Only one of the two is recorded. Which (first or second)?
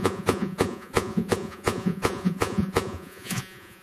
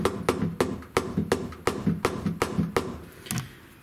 second